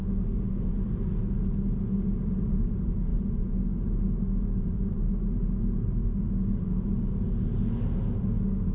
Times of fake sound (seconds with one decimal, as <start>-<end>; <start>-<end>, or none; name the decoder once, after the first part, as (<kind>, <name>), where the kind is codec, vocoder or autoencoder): 0.0-0.7 (autoencoder, DAC-VAE)

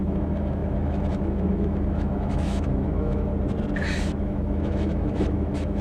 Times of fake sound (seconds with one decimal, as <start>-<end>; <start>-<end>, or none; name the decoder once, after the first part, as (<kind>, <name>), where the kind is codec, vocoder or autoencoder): 0.0-3.3 (autoencoder, DAC-VAE); 4.2-5.8

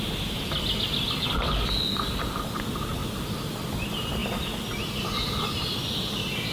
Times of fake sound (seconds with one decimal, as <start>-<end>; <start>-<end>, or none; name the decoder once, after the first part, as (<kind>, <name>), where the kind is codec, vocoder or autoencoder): none